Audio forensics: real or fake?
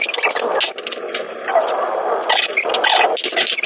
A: real